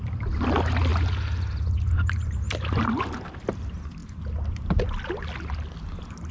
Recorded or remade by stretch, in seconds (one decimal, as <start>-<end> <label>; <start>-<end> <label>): 0.0-6.3 recorded